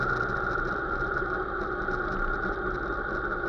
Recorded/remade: recorded